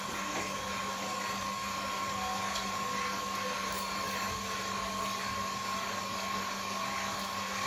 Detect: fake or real fake